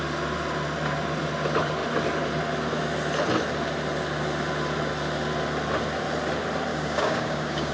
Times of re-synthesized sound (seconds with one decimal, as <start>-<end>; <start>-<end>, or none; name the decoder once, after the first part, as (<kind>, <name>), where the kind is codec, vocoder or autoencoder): 6.7-7.7 (codec, DAC)